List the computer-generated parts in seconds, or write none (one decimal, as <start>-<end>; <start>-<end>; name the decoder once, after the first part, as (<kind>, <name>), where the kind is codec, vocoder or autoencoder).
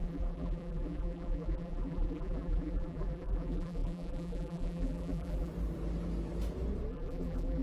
0.0-5.5 (vocoder, BigVGAN v2); 6.9-7.6